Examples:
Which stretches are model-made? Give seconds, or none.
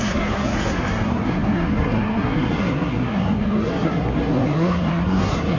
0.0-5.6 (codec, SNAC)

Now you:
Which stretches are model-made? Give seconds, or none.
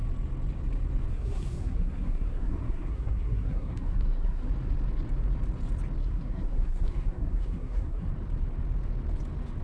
1.1-4.5 (codec, SNAC); 6.0-8.1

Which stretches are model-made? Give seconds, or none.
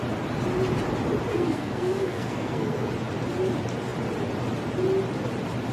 1.3-2.9 (codec, SNAC)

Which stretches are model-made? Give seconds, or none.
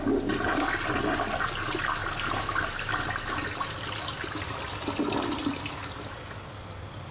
none